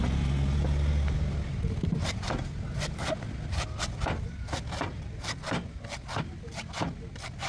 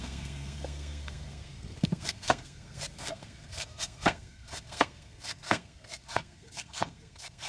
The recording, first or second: first